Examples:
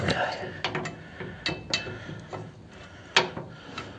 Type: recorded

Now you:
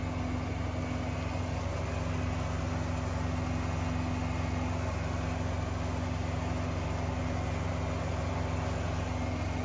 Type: recorded